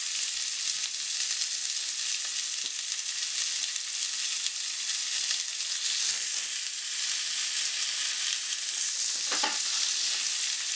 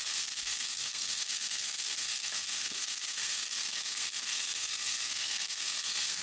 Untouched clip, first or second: first